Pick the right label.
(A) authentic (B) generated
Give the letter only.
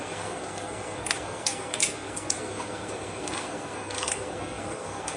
B